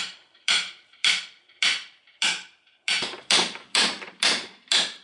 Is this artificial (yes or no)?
yes